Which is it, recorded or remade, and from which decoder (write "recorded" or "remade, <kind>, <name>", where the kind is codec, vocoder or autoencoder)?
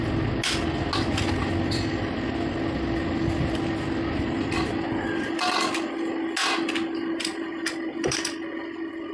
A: recorded